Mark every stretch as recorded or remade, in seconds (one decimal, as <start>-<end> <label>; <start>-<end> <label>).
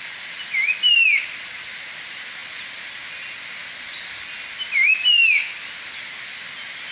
0.0-6.9 recorded